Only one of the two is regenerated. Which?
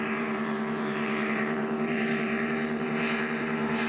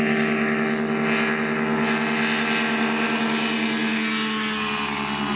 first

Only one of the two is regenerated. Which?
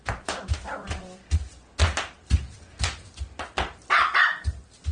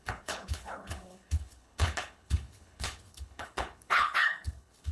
second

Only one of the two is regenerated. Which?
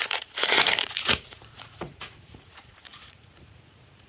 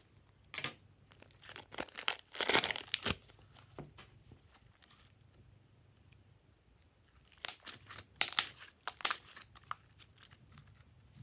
first